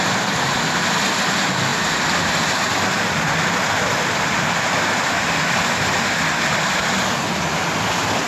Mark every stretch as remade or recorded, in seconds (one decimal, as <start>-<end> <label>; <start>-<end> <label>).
0.0-8.3 recorded